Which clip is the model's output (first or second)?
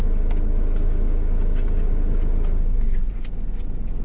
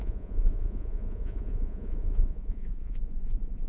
second